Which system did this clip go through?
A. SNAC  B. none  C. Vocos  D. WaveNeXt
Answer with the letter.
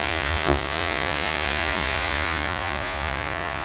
C